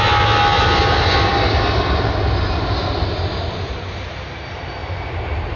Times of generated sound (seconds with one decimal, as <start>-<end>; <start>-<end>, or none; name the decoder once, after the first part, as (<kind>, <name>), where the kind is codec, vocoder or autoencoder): none